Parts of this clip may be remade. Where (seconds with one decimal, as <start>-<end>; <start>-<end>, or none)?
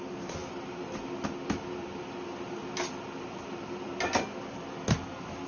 none